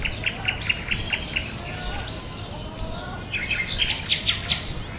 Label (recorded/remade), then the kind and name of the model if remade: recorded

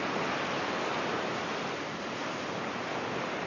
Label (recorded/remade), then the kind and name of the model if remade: recorded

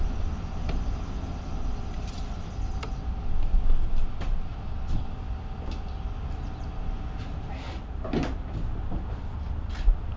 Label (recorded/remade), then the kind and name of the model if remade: recorded